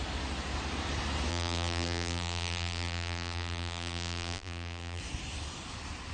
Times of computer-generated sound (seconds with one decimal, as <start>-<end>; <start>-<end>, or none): 1.3-5.0